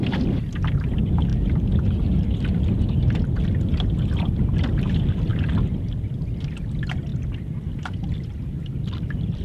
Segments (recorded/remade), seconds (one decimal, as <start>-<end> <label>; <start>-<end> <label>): 0.0-9.4 recorded